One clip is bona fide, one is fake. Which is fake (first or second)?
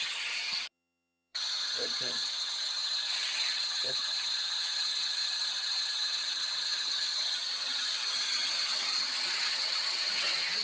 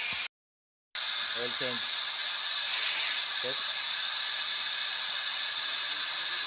first